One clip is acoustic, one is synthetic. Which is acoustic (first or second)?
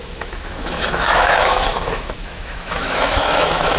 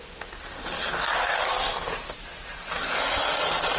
second